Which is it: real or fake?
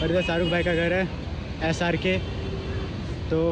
real